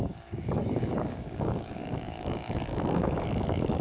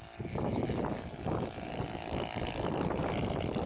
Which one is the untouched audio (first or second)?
second